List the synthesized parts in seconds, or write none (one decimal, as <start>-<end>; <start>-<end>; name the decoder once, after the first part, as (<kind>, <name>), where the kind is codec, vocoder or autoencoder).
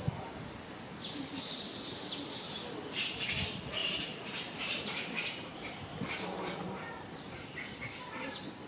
3.8-7.0 (vocoder, BigVGAN v2)